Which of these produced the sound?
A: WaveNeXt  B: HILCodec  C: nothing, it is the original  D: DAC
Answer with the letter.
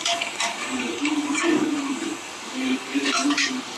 D